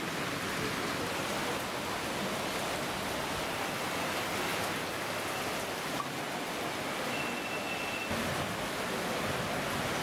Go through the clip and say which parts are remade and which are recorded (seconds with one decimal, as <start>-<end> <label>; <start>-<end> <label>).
0.0-10.0 recorded